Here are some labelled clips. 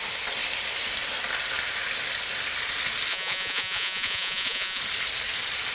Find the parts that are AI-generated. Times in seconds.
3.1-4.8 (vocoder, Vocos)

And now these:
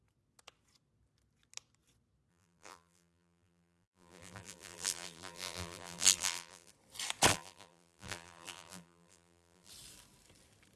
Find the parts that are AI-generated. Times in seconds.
2.3-6.7 (vocoder, BigVGAN v2); 7.3-9.7

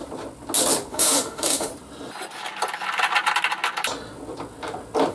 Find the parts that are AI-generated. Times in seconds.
0.9-1.7 (autoencoder, DAC-VAE)